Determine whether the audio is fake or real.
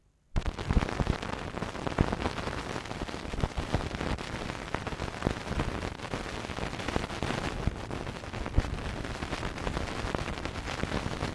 real